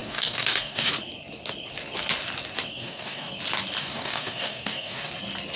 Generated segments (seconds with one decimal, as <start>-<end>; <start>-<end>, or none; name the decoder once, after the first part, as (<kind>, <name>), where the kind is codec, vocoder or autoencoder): 0.0-0.9 (codec, DAC); 2.7-3.3; 3.8-5.1